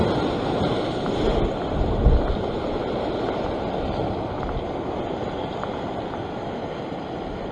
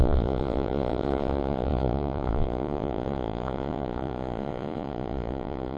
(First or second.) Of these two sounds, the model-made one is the second